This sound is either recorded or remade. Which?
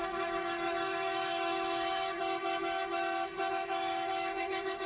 remade